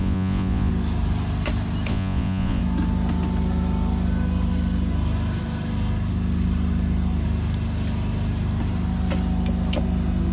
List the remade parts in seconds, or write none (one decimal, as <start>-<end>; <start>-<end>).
0.0-0.7; 1.9-2.6